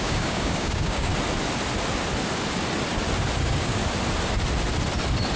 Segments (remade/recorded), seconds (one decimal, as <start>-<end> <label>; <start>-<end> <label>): 0.0-1.1 remade; 1.1-3.4 recorded; 3.4-3.8 remade; 3.8-5.4 recorded